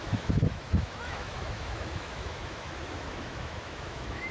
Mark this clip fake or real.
fake